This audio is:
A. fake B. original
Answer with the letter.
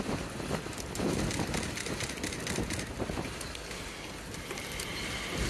B